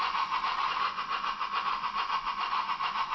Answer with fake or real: fake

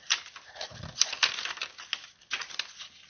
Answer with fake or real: real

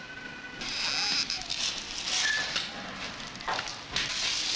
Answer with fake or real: real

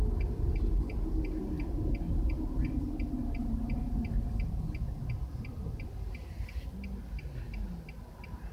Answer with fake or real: real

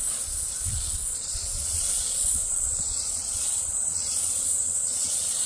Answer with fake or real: fake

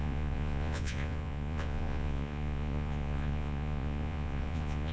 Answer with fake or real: fake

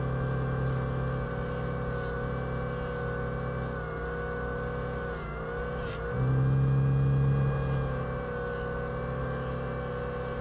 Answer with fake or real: real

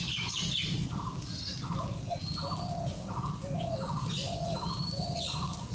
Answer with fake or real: real